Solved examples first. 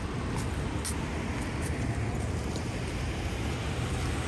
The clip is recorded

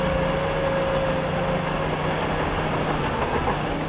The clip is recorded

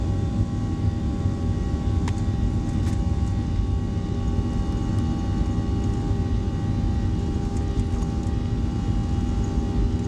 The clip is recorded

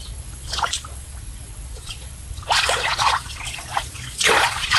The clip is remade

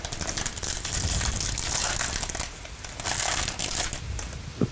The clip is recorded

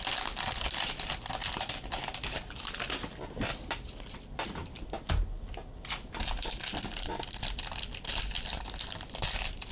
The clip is recorded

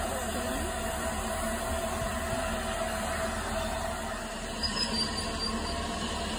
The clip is recorded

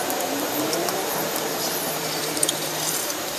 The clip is remade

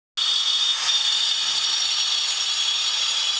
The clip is recorded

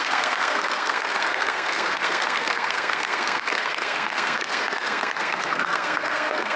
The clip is remade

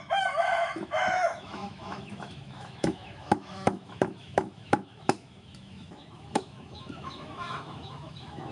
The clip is remade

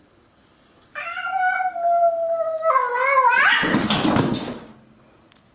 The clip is recorded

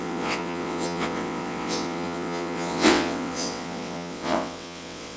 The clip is remade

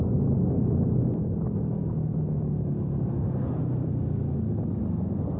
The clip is recorded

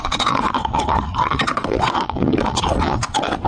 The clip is remade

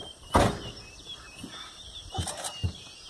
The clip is recorded